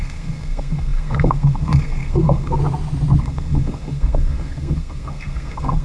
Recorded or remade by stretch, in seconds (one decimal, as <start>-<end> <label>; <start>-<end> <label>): 0.0-2.6 remade; 2.6-3.2 recorded; 3.2-5.8 remade